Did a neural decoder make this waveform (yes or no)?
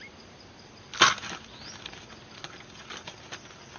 no